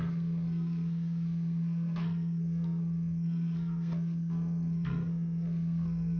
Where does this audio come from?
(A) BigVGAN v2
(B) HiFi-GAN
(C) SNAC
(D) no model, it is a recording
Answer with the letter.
C